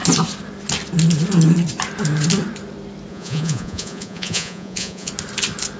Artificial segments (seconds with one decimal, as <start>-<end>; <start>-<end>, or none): 3.1-5.1